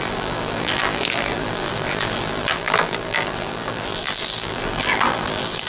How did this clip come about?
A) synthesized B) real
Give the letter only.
A